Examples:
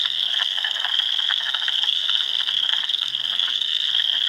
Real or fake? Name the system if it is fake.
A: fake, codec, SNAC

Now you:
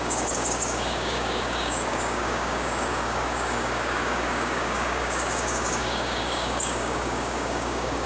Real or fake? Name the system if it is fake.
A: fake, codec, DAC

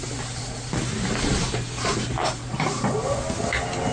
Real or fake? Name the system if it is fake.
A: real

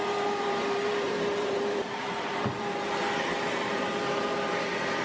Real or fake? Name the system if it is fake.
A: fake, vocoder, BigVGAN v2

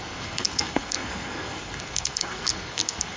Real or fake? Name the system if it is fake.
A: fake, codec, SNAC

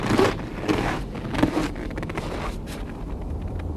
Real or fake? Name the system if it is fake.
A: real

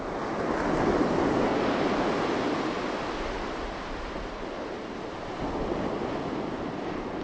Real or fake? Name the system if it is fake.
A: real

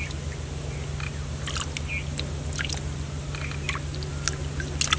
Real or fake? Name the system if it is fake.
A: real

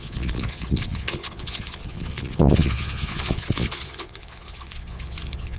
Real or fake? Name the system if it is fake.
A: fake, vocoder, Vocos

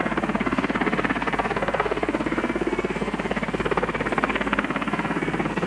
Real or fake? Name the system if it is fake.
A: fake, codec, SNAC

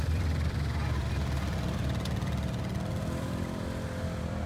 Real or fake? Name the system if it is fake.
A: fake, vocoder, BigVGAN v2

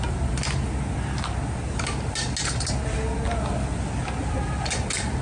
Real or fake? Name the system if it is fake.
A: real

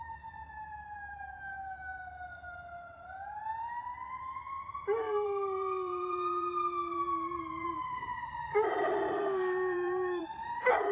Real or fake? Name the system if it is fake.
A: fake, vocoder, BigVGAN v2